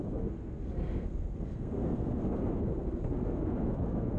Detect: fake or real fake